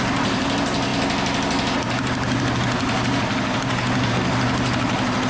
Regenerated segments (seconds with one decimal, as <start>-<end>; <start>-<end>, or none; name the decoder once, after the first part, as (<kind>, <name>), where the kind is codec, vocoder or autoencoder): none